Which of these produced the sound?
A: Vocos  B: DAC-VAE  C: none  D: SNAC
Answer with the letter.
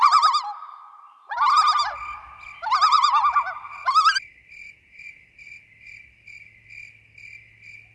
C